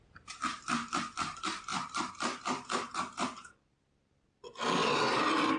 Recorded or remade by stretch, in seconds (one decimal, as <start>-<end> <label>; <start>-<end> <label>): 0.0-1.7 recorded; 1.7-3.5 remade; 3.5-5.6 recorded